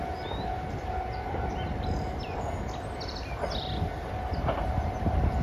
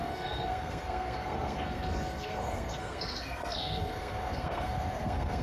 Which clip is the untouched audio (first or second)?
first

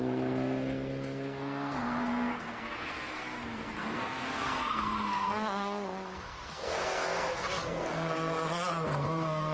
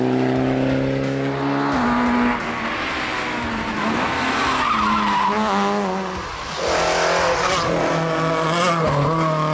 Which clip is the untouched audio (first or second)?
second